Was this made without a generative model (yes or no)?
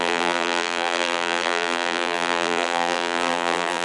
no